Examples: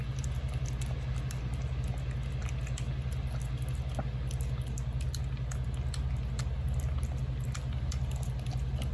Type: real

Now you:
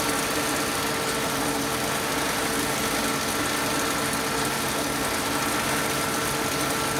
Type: real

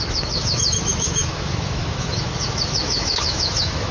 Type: fake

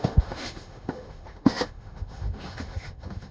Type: fake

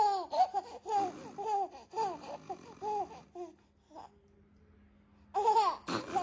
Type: real